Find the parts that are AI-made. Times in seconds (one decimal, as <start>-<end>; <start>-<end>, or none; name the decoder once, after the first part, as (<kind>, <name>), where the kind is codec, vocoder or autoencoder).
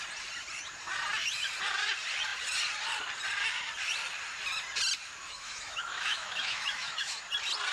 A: 5.2-7.2 (autoencoder, DAC-VAE)